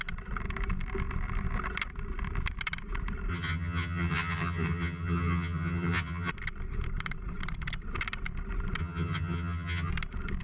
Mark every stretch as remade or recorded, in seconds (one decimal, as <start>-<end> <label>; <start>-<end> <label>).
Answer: 0.0-3.3 recorded; 3.3-6.3 remade; 6.3-8.8 recorded; 8.8-9.9 remade; 9.9-10.4 recorded